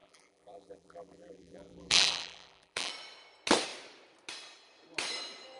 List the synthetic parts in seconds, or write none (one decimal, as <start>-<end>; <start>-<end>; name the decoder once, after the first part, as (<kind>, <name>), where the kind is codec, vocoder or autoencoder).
0.0-2.9 (vocoder, BigVGAN v2)